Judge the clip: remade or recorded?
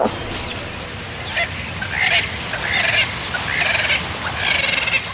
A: recorded